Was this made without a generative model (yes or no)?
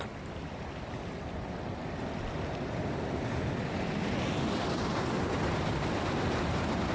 yes